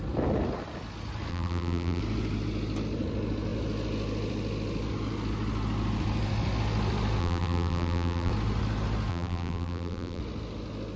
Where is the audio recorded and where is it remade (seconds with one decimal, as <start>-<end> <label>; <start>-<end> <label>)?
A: 0.0-1.3 recorded; 1.3-2.0 remade; 2.0-7.2 recorded; 7.2-8.3 remade; 8.3-9.1 recorded; 9.1-10.2 remade; 10.2-11.0 recorded